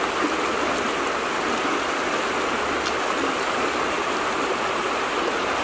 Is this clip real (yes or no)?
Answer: yes